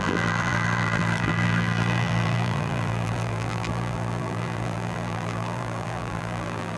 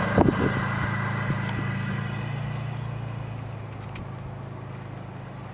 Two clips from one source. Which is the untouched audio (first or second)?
second